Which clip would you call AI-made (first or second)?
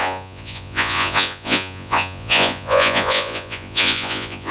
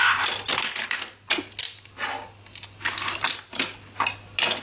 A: first